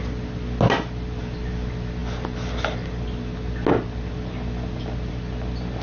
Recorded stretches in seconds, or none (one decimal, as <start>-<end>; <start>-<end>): 0.0-5.8